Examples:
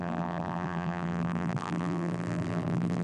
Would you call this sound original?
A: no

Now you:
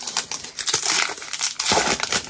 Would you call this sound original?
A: yes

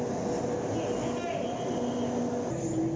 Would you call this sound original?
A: yes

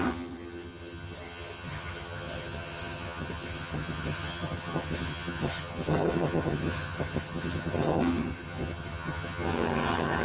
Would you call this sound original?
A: no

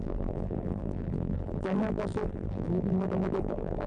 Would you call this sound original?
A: no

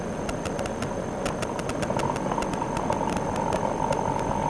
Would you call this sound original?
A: yes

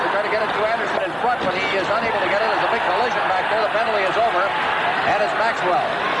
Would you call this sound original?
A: yes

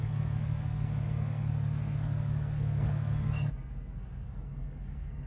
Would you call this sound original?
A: no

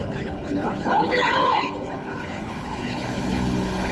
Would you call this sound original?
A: no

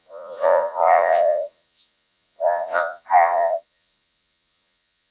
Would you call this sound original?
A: no